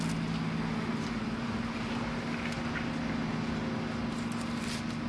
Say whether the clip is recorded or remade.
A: recorded